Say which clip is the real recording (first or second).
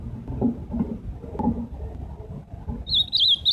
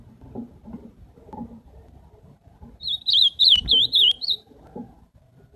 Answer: first